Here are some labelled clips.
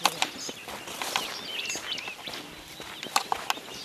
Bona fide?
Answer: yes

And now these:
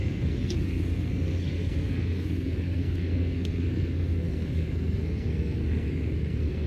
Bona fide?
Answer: no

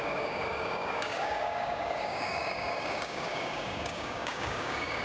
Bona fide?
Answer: no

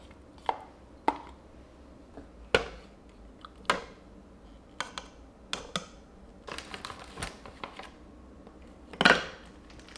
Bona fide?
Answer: yes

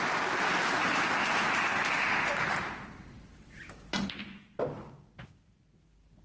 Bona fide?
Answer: yes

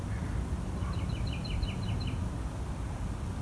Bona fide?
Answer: yes